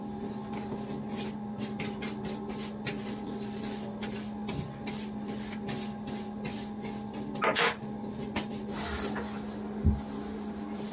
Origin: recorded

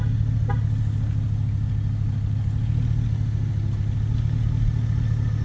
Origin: recorded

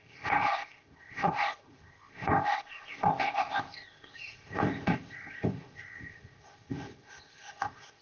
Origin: remade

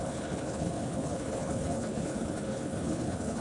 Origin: remade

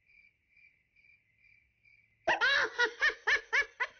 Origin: recorded